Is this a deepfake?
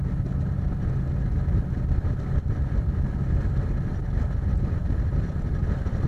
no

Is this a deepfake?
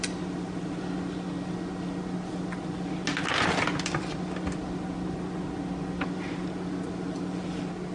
no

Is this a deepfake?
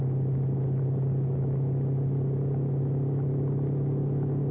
no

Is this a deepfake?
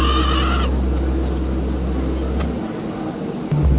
no